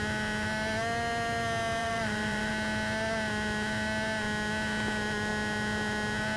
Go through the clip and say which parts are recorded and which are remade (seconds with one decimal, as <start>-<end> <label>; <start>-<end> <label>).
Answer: 0.0-1.8 recorded; 1.8-2.5 remade; 2.5-6.4 recorded